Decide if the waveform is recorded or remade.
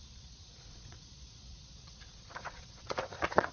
remade